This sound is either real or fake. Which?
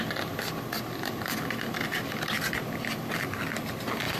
real